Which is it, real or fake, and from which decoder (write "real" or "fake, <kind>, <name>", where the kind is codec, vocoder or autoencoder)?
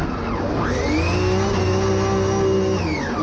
real